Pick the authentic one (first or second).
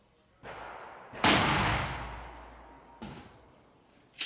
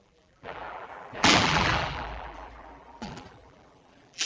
first